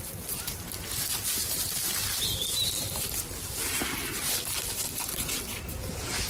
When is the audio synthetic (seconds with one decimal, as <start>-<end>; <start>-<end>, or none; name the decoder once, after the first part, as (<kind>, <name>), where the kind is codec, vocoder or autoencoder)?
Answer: none